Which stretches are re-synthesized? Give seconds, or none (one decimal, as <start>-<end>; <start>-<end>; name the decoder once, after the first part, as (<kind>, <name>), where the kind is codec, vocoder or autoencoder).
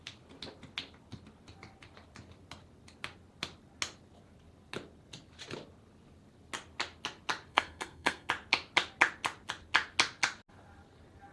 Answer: 7.5-8.3 (codec, SNAC)